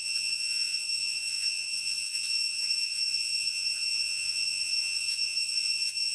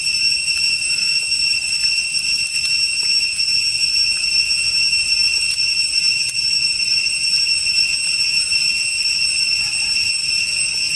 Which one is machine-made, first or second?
first